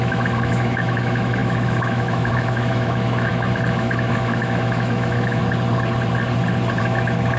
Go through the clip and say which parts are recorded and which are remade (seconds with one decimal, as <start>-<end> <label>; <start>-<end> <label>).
0.0-5.4 remade; 5.4-6.8 recorded; 6.8-7.4 remade